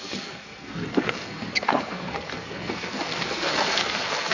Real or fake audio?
fake